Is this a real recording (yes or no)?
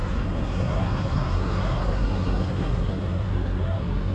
no